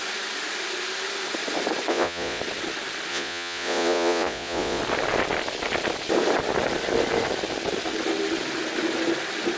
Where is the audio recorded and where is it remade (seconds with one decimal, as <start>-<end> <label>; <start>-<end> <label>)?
0.0-1.9 recorded; 1.9-2.4 remade; 2.4-3.1 recorded; 3.1-4.8 remade; 4.8-9.6 recorded

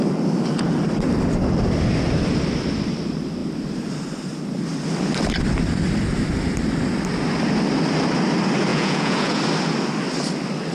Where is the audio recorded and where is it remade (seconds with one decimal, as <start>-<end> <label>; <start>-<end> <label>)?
0.0-8.7 recorded; 8.7-9.4 remade; 9.4-10.7 recorded

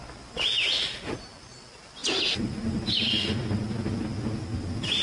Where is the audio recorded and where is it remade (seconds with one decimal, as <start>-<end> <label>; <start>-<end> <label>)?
0.0-5.0 recorded